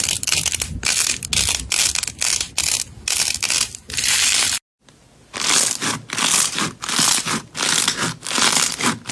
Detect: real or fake real